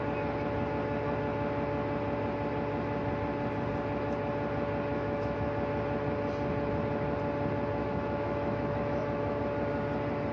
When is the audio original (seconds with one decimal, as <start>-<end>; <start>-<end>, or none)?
0.0-4.9; 5.5-7.8; 9.4-10.3